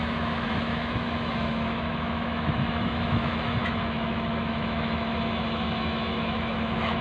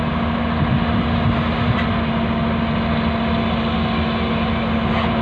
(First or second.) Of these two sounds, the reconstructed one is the first